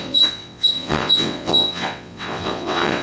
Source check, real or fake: fake